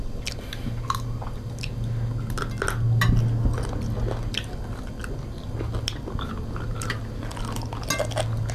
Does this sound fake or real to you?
real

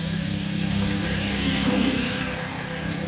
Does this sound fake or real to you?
fake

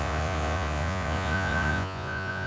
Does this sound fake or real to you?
fake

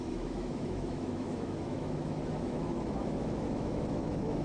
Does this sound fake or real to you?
fake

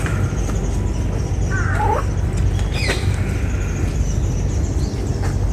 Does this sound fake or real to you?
real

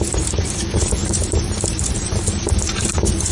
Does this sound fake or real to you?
fake